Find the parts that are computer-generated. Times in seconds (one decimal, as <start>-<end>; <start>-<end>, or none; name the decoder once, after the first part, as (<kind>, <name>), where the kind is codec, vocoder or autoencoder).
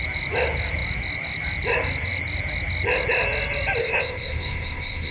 3.8-5.1 (codec, ZipCodec)